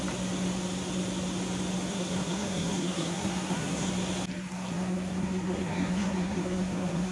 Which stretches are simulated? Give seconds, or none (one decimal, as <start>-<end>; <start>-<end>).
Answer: 1.9-3.9; 4.7-7.1